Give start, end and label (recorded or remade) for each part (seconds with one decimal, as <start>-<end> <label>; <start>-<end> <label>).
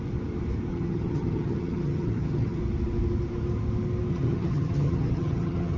0.0-0.7 recorded; 0.7-2.6 remade; 2.6-4.1 recorded; 4.1-5.8 remade